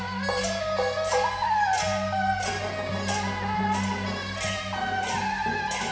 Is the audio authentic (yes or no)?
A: yes